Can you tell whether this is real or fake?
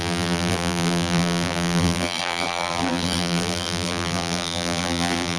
fake